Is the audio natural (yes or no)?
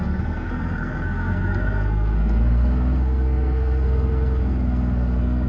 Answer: no